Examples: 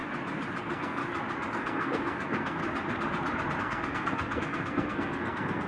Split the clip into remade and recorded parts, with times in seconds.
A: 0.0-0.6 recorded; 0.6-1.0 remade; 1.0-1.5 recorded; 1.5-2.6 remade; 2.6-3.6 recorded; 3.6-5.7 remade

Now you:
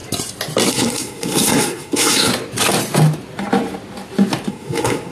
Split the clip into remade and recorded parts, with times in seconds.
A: 0.0-0.7 recorded; 0.7-2.3 remade; 2.3-4.5 recorded; 4.5-5.1 remade

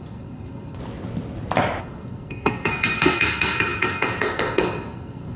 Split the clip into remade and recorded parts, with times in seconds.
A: 0.0-0.8 remade; 0.8-1.8 recorded; 1.8-5.4 remade